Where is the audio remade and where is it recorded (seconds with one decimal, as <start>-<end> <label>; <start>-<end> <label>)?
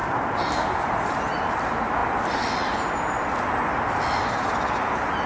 0.0-5.3 recorded